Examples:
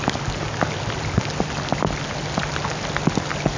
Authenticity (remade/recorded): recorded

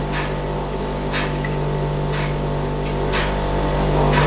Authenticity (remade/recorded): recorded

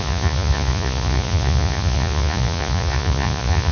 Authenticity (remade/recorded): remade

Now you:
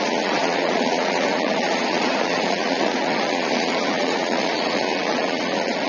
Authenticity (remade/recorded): remade